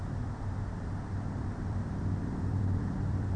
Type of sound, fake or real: fake